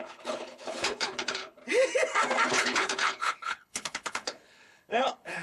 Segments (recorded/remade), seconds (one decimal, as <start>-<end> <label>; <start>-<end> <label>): 0.0-1.6 remade; 1.6-2.5 recorded; 2.5-5.4 remade